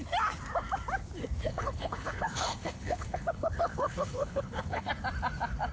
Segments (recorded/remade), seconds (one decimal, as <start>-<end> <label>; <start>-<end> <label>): 0.0-1.5 recorded; 1.5-4.9 remade; 4.9-5.7 recorded